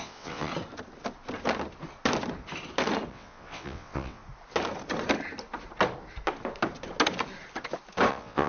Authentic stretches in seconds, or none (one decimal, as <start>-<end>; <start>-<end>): 0.5-3.1; 4.2-8.1